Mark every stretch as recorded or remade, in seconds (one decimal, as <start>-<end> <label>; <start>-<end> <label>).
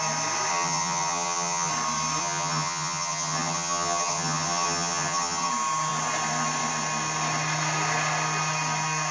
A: 0.0-0.5 recorded; 0.5-1.7 remade; 1.7-2.2 recorded; 2.2-5.5 remade; 5.5-9.1 recorded